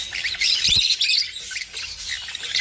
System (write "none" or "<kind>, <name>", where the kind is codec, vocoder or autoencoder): vocoder, BigVGAN v2